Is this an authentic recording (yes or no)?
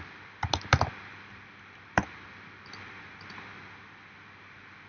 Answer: yes